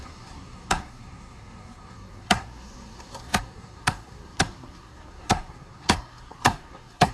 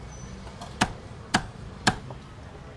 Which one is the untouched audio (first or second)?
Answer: second